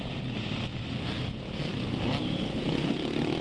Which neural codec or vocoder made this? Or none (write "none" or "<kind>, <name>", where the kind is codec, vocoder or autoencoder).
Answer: none